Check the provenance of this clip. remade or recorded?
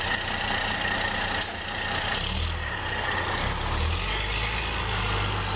recorded